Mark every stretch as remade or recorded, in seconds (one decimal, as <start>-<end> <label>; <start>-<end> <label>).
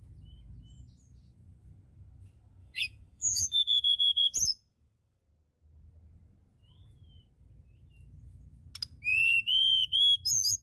0.0-2.6 recorded; 2.6-5.2 remade; 5.2-9.1 recorded; 9.1-10.0 remade; 10.0-10.6 recorded